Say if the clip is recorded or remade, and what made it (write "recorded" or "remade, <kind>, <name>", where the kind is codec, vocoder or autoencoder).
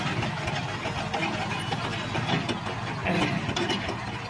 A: recorded